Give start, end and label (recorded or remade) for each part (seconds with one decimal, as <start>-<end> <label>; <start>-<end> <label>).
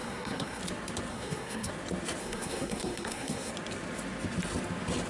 0.0-0.6 remade; 0.6-1.1 recorded; 1.1-1.7 remade; 1.7-2.2 recorded; 2.2-3.5 remade; 3.5-5.1 recorded